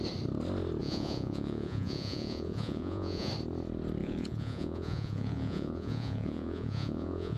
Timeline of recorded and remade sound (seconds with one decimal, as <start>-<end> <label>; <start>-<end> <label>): 0.0-0.8 recorded; 0.8-3.3 remade; 3.3-4.0 recorded; 4.0-7.4 remade